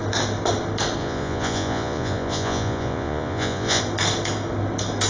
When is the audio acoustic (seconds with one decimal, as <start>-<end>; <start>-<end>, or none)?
0.0-1.0; 3.8-5.1